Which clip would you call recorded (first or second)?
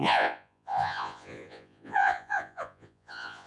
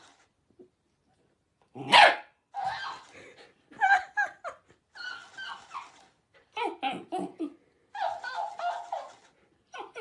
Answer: second